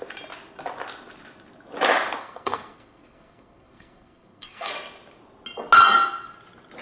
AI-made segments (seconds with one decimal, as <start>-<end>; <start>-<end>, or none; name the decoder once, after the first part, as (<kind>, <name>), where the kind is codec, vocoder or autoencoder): 2.2-4.7 (codec, SNAC)